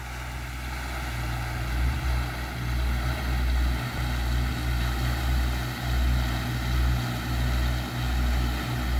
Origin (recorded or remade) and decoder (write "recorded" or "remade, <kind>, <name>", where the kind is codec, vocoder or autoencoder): recorded